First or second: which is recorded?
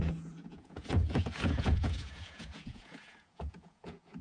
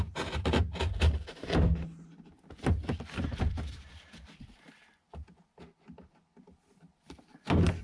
second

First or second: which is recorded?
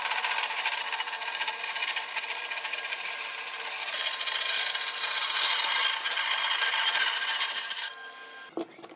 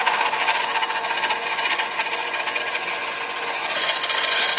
first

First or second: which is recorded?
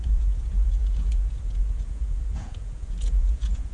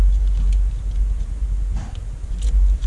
second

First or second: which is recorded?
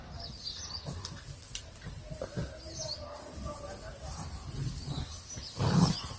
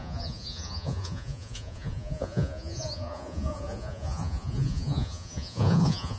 first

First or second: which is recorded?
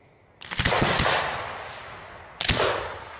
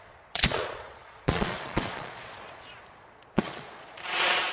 first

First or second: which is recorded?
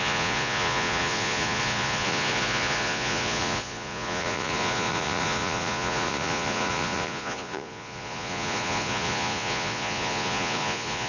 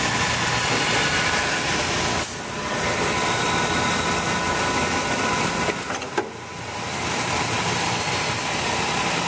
second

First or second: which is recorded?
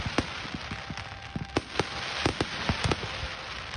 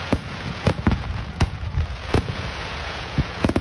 first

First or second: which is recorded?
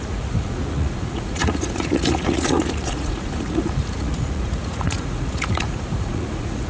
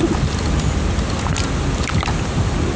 second